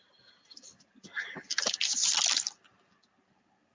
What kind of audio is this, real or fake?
real